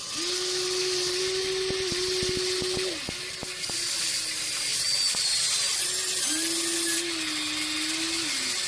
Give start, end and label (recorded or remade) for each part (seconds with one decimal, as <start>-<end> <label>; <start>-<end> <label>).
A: 0.0-8.7 recorded